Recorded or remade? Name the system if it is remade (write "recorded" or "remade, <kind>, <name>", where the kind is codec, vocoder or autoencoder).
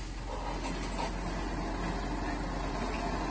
recorded